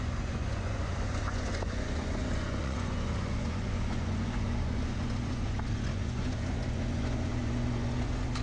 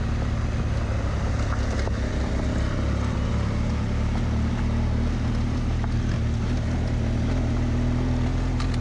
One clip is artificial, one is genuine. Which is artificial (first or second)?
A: first